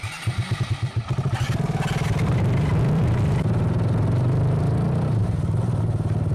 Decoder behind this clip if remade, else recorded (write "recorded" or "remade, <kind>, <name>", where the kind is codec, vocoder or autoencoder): remade, vocoder, BigVGAN v2